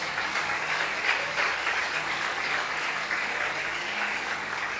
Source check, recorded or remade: remade